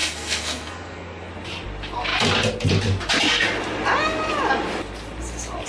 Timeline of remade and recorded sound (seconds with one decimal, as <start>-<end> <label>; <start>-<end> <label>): 0.0-1.3 remade; 1.3-5.7 recorded